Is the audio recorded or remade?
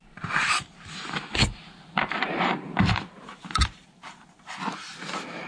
remade